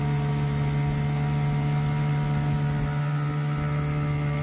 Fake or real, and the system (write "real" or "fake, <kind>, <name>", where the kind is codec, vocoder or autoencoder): real